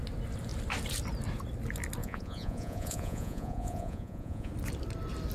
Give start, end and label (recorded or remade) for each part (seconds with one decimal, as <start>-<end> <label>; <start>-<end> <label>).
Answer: 0.0-2.0 recorded; 2.0-4.5 remade; 4.5-5.3 recorded